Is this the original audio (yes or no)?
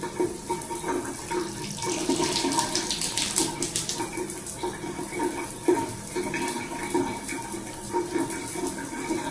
yes